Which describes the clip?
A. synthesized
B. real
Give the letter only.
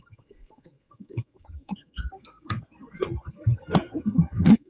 A